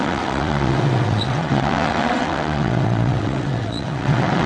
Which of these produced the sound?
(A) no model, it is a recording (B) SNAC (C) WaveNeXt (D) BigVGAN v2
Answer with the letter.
C